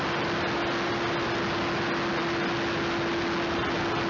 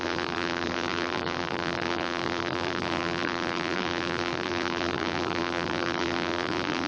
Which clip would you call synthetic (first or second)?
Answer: second